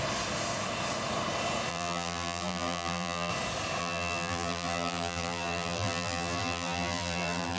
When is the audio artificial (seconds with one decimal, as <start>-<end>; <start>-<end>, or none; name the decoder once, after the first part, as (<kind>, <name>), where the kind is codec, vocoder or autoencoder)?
1.7-3.3 (vocoder, BigVGAN v2); 3.8-7.6